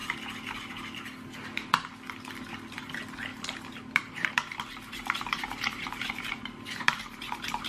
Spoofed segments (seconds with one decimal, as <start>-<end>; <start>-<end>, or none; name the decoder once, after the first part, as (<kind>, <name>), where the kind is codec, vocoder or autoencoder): 3.3-7.7 (vocoder, BigVGAN v2)